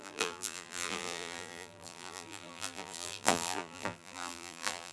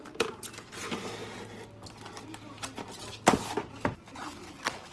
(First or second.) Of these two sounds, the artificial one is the first